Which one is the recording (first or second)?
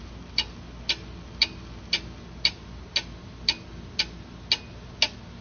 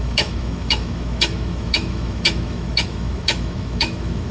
first